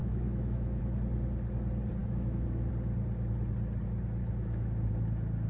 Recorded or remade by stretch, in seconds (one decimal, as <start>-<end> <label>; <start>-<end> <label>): 0.0-0.8 remade; 0.8-2.0 recorded; 2.0-2.7 remade; 2.7-4.2 recorded; 4.2-4.9 remade; 4.9-5.5 recorded